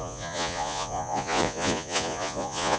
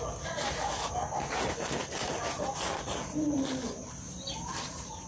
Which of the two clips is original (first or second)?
second